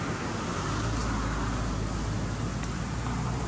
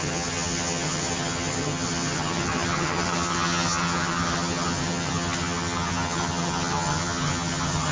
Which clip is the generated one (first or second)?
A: second